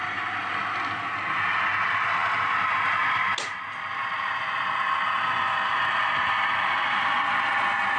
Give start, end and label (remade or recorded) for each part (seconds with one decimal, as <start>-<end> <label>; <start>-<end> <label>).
0.0-8.0 recorded